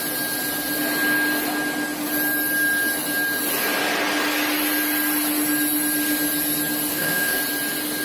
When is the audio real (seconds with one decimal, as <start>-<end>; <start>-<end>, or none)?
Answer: 0.0-6.9; 7.4-8.0